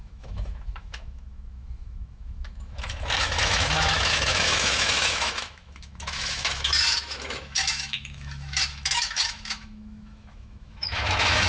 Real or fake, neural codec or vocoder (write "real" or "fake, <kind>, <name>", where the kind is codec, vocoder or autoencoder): fake, autoencoder, DAC-VAE